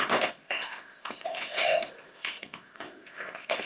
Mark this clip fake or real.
fake